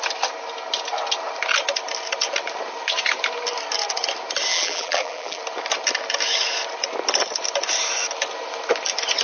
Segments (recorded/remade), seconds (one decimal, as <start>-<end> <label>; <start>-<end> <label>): 0.0-4.5 recorded; 4.5-5.4 remade; 5.4-9.2 recorded